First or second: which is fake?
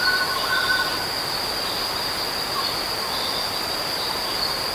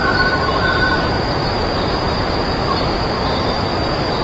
second